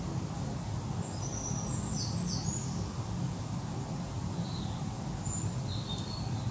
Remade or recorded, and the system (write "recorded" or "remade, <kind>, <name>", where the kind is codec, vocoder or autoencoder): recorded